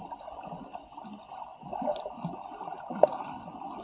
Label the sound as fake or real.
real